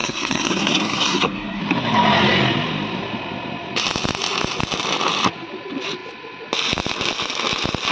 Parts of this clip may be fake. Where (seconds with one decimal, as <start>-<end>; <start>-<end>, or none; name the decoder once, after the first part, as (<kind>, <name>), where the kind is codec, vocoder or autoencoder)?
0.0-1.6 (codec, SNAC)